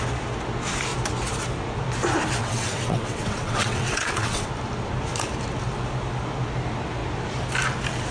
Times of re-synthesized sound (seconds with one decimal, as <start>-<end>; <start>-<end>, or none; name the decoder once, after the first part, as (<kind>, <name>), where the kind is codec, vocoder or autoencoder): 2.4-4.5 (vocoder, WaveNeXt)